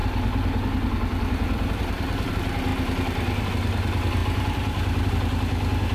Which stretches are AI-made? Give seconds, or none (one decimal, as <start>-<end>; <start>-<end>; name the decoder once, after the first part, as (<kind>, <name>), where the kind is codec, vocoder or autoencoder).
0.0-2.3 (vocoder, BigVGAN v2); 2.7-3.5; 4.2-5.1